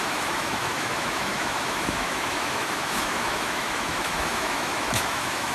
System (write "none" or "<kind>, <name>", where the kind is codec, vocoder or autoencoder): autoencoder, DAC-VAE